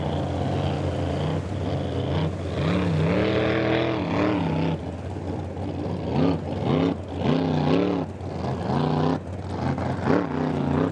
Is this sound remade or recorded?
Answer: recorded